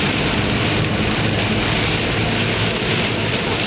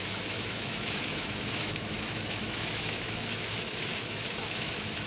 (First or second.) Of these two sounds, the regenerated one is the second